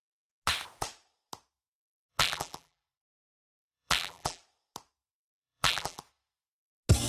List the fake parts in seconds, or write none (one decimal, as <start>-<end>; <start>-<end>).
2.1-4.4; 5.3-6.0